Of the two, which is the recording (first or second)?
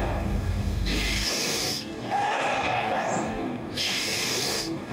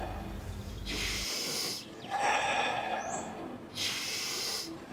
second